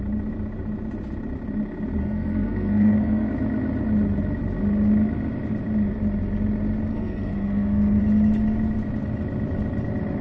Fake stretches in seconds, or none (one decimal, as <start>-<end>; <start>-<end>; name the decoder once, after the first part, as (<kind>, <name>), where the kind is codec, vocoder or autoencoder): 2.0-3.3 (codec, SNAC); 6.9-8.0